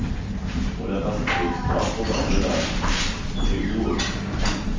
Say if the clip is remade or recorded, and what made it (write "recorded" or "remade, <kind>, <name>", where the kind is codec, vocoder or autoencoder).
recorded